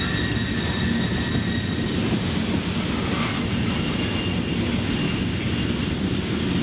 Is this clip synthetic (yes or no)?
no